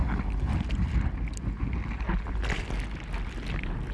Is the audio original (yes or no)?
yes